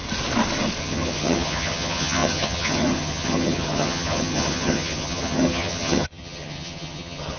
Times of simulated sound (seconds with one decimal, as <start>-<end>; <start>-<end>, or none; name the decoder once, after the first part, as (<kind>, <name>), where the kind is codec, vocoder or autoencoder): 0.8-7.4 (vocoder, HiFi-GAN)